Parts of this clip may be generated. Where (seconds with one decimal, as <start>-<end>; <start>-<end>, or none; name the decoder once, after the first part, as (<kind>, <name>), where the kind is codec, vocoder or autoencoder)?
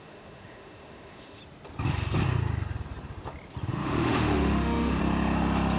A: 0.0-1.4 (autoencoder, DAC-VAE); 3.7-5.0